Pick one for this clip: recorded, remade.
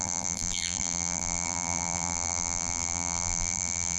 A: remade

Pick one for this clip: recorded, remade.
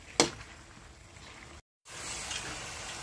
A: recorded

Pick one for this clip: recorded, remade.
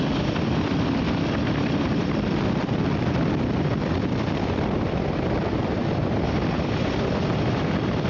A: remade